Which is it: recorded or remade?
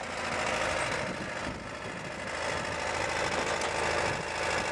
recorded